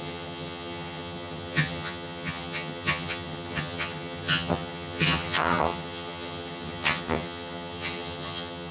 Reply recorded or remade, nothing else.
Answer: remade